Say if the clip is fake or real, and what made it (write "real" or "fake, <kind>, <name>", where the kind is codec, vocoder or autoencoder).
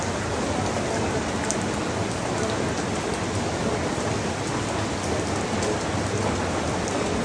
real